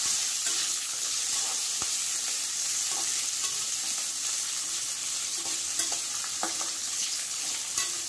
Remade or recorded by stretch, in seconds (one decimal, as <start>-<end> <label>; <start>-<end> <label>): 0.0-0.6 recorded; 0.6-1.1 remade; 1.1-6.8 recorded; 6.8-7.5 remade; 7.5-8.1 recorded